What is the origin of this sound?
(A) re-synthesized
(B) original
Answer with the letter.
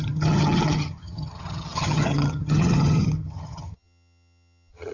A